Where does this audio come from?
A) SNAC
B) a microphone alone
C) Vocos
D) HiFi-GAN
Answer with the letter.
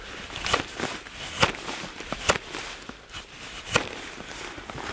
B